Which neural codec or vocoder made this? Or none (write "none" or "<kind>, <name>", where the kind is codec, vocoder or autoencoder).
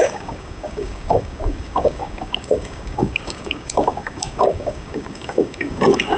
codec, DAC